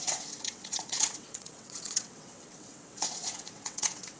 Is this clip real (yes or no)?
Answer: no